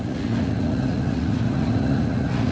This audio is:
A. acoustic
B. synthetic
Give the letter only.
B